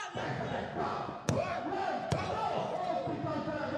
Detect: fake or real fake